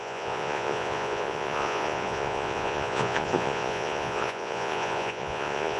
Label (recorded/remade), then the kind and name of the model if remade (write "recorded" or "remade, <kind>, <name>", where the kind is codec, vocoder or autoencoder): remade, vocoder, Vocos